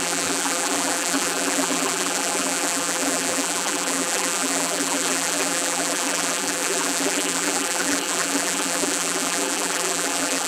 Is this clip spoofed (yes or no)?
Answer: yes